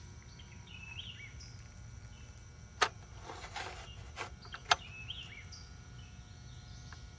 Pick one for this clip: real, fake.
real